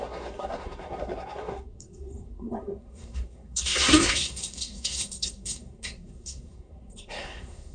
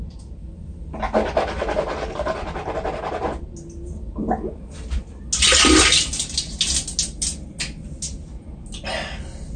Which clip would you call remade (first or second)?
first